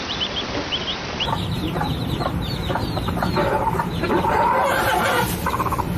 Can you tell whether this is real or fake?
fake